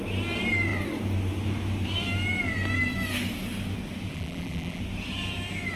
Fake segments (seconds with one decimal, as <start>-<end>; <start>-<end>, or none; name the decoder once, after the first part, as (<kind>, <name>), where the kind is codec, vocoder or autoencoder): 4.1-4.8 (vocoder, BigVGAN v2)